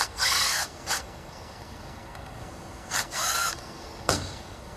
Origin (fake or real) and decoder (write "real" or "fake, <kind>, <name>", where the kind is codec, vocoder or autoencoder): fake, codec, SNAC